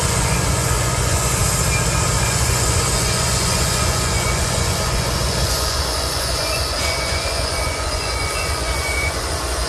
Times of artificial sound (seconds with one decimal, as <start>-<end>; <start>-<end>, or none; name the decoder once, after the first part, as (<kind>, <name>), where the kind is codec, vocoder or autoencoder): 0.0-1.4 (vocoder, Vocos); 2.2-9.7